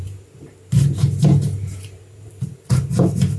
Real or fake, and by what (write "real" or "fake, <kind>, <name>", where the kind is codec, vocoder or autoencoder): fake, vocoder, BigVGAN v2